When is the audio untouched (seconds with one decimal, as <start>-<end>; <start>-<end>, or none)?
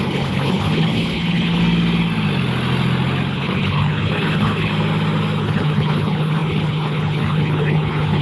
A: 1.6-3.3; 4.7-5.4